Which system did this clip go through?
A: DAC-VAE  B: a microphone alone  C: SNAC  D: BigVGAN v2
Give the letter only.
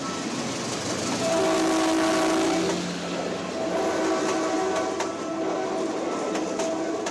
B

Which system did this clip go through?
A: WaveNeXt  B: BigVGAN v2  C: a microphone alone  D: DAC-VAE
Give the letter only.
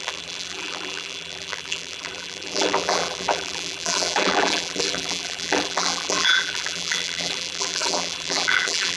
B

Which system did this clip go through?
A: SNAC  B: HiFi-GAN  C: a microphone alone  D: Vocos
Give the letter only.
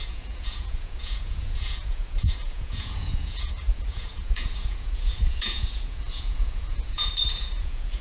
D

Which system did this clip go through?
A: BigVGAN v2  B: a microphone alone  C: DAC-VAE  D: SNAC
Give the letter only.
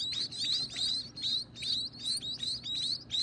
B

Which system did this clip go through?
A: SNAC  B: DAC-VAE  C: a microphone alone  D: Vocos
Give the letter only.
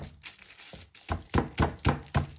C